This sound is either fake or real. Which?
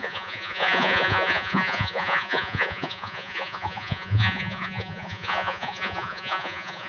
fake